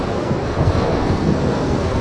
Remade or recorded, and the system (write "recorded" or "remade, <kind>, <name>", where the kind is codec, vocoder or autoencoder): remade, codec, SNAC